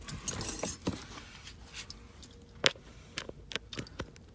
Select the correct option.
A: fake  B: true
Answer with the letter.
B